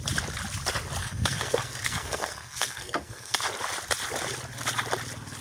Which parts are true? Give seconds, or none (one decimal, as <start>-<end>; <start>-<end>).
0.0-1.0; 3.4-5.4